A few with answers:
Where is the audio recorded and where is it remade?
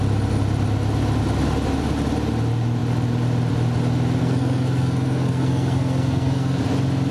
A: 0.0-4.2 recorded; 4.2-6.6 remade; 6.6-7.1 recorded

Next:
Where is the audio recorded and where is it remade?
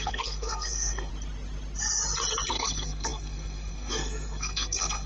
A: 0.0-1.1 remade; 1.1-2.5 recorded; 2.5-5.1 remade